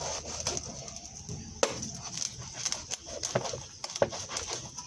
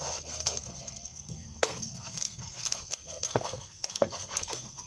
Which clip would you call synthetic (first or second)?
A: second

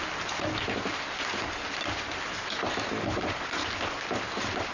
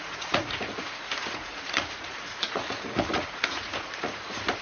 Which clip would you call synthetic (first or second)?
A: second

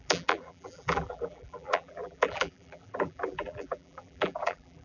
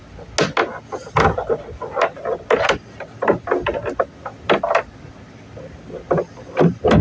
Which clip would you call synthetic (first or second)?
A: first